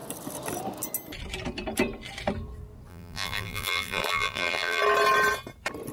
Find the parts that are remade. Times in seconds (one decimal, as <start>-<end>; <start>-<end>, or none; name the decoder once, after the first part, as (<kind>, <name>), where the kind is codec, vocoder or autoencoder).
2.9-4.8 (vocoder, BigVGAN v2)